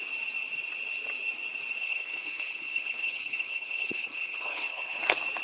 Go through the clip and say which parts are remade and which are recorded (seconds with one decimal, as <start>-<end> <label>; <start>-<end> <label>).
0.0-1.8 recorded; 1.8-5.0 remade; 5.0-5.4 recorded